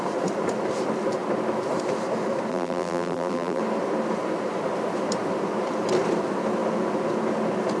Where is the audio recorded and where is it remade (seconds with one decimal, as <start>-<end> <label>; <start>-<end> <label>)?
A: 0.0-2.5 recorded; 2.5-3.6 remade; 3.6-7.8 recorded